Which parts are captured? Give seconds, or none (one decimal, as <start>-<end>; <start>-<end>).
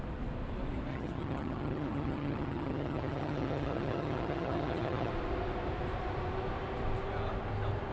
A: 0.0-0.9; 5.1-7.9